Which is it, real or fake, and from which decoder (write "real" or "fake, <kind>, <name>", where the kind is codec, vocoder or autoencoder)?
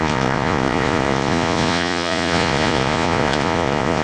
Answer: fake, vocoder, Vocos